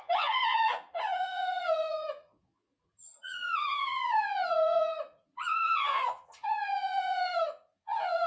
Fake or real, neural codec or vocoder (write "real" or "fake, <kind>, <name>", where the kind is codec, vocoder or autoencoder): fake, vocoder, Vocos